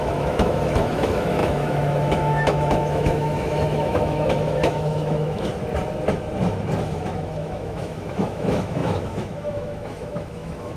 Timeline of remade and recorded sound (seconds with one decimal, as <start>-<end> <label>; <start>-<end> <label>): 0.0-5.5 remade; 5.5-6.8 recorded; 6.8-10.8 remade

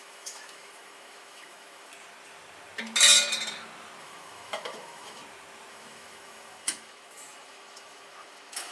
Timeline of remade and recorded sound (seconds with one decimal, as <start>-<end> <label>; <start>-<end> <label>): 0.0-1.9 remade; 1.9-4.0 recorded; 4.0-5.2 remade; 5.2-5.7 recorded; 5.7-8.7 remade